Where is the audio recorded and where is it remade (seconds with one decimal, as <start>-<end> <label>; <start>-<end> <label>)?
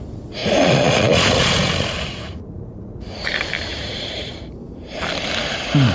0.0-0.4 recorded; 0.4-3.2 remade; 3.2-3.7 recorded; 3.7-4.3 remade; 4.3-5.9 recorded